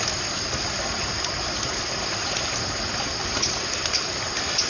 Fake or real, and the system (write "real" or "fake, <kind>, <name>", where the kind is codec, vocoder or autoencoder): real